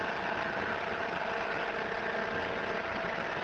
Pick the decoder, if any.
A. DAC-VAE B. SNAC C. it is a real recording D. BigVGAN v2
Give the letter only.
C